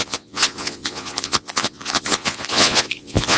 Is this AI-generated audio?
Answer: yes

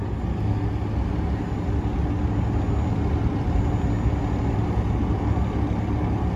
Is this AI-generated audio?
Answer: no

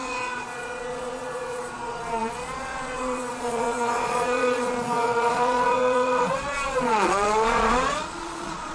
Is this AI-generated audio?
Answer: yes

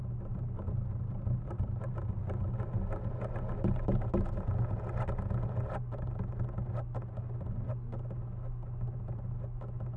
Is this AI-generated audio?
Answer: no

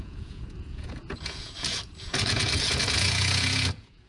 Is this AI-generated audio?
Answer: yes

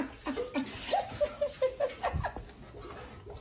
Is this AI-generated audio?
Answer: no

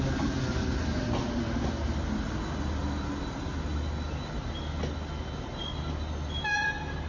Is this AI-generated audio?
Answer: no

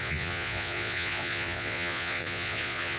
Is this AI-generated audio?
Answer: yes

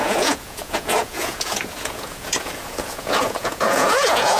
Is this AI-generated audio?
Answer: yes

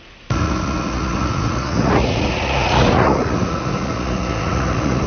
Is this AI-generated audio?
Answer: yes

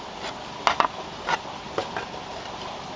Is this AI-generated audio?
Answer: no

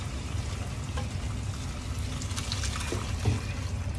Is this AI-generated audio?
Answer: no